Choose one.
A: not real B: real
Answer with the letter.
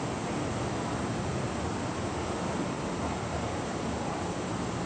B